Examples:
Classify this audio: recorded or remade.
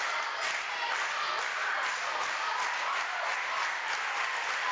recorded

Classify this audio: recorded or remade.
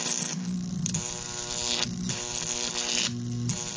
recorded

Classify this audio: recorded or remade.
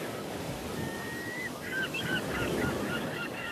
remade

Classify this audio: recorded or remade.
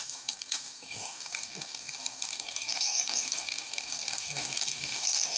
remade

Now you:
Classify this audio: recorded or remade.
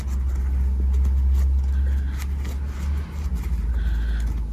recorded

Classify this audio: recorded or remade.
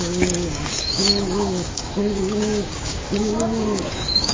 remade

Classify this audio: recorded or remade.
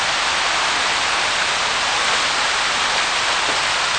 recorded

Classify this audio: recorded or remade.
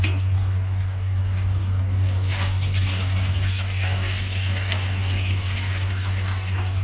remade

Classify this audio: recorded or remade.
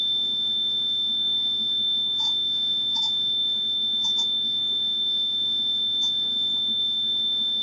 remade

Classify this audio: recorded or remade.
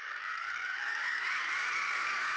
remade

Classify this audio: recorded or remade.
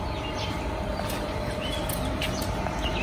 recorded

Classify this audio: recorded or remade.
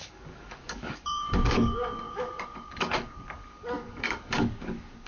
remade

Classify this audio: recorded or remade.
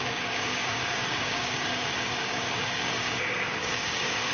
remade